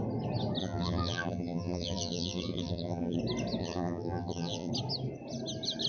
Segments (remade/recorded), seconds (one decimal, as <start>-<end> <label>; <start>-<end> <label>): 0.0-0.6 recorded; 0.6-3.2 remade; 3.2-3.6 recorded; 3.6-4.7 remade; 4.7-5.9 recorded